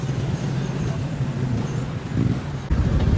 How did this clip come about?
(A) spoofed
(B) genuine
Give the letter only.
B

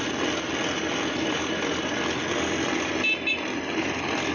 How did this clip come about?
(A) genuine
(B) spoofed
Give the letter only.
A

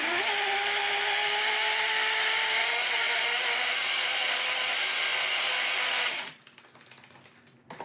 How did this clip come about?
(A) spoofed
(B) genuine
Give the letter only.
B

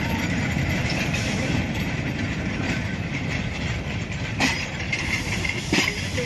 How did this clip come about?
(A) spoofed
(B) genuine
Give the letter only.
A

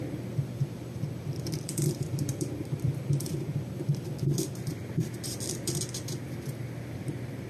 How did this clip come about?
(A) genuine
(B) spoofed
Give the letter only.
B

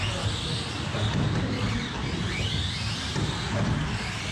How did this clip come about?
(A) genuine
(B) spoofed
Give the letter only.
A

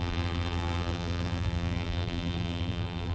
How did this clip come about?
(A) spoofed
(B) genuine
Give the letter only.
A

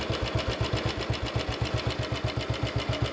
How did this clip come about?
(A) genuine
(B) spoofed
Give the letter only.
A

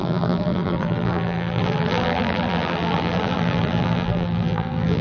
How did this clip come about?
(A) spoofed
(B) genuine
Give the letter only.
A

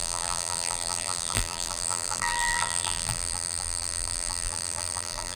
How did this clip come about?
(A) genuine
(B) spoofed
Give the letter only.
B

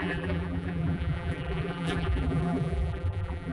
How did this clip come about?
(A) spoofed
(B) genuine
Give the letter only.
A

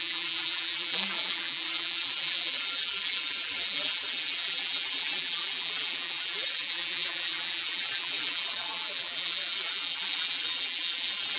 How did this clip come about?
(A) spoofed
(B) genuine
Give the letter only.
A